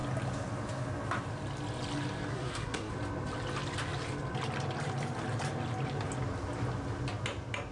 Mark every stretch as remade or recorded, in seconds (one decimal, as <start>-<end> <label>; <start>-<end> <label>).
0.0-2.3 recorded; 2.3-2.9 remade; 2.9-7.7 recorded